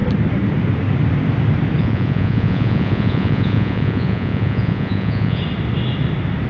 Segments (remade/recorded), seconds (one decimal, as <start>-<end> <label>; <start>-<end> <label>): 0.0-1.8 recorded; 1.8-5.4 remade; 5.4-6.5 recorded